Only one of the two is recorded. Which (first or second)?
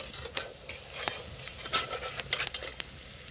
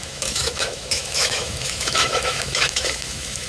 first